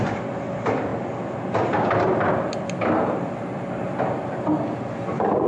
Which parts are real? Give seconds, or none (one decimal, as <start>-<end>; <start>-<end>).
0.0-5.5